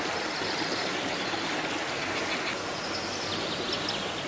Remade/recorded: recorded